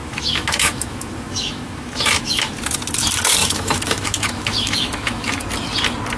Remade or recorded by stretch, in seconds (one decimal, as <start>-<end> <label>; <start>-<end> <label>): 0.0-2.5 remade; 2.5-3.4 recorded; 3.4-5.4 remade; 5.4-6.2 recorded